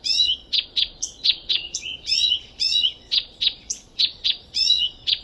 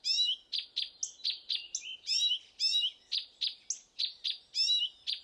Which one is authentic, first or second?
second